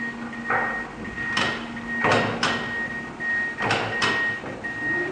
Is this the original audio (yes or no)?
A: yes